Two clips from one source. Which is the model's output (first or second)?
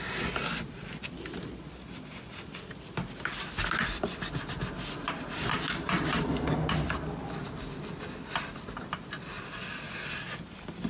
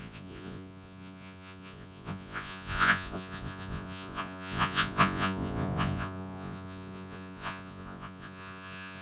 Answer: second